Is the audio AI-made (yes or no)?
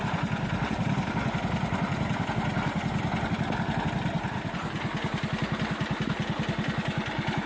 no